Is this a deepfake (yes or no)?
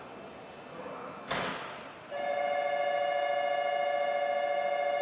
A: no